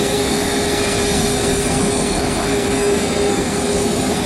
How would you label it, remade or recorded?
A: remade